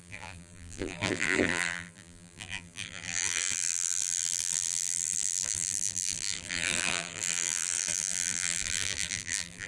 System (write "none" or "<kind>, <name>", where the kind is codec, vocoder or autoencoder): vocoder, BigVGAN v2